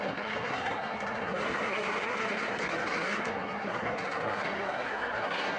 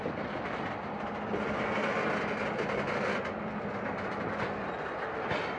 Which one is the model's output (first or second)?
first